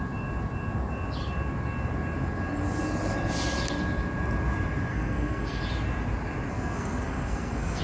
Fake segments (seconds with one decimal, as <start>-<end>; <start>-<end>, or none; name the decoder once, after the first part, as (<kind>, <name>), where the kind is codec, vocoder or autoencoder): 4.9-5.6 (codec, SNAC); 6.5-7.8